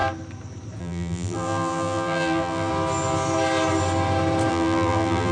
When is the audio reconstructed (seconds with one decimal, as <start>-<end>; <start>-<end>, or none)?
0.8-2.7; 4.5-5.3